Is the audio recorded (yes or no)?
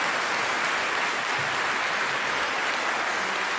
yes